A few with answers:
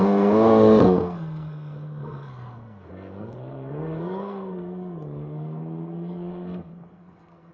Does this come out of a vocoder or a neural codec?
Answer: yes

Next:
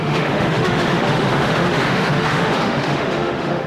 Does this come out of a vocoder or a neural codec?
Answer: yes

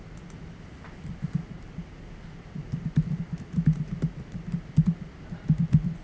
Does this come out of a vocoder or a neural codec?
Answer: no